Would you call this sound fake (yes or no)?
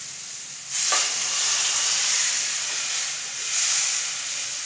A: no